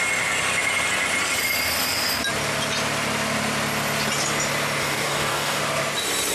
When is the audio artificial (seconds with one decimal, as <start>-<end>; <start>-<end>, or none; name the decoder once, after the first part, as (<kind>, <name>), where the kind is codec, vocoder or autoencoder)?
4.8-5.6 (codec, DAC)